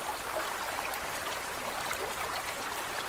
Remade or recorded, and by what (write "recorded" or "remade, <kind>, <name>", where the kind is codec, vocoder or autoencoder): remade, vocoder, BigVGAN v2